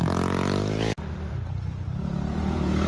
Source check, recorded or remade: recorded